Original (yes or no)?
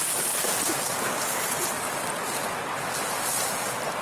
yes